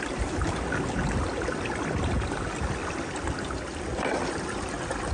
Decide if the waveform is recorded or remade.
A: recorded